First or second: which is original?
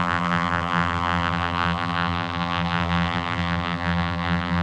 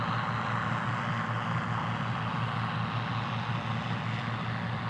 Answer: second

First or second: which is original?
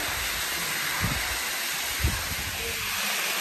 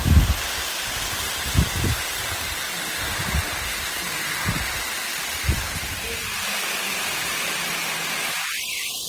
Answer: first